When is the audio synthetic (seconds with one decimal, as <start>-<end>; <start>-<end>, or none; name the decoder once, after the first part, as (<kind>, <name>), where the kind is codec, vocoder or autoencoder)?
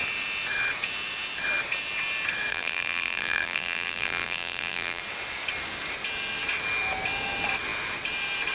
2.5-5.0 (vocoder, BigVGAN v2)